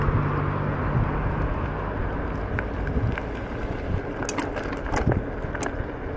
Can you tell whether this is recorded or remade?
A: recorded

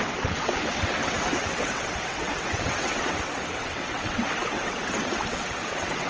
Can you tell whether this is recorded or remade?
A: remade